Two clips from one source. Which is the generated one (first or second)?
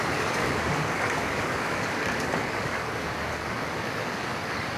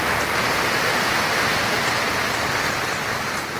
first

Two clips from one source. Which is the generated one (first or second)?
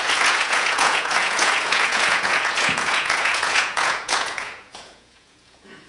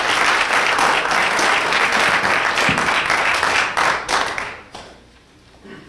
first